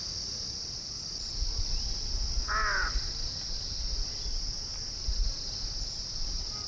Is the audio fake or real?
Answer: real